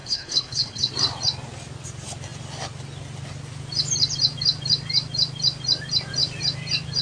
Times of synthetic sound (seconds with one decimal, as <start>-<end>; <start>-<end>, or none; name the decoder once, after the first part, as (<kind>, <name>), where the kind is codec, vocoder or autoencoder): 0.0-0.9 (codec, HILCodec)